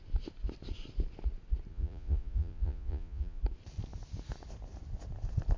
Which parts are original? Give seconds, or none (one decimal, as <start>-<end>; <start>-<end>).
0.0-1.7; 3.4-5.6